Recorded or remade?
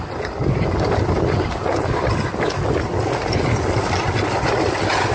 recorded